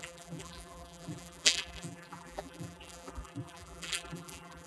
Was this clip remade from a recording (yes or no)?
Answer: yes